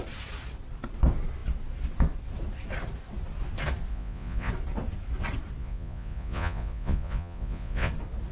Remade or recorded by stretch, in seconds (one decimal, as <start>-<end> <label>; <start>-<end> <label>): 0.0-3.9 recorded; 3.9-4.5 remade; 4.5-5.6 recorded; 5.6-7.9 remade; 7.9-8.3 recorded